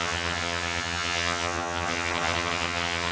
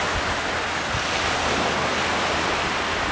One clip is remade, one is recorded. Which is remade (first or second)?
first